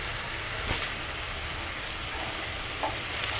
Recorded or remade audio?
recorded